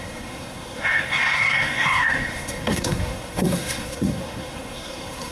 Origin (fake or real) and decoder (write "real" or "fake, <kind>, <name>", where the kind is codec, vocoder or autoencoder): fake, codec, SNAC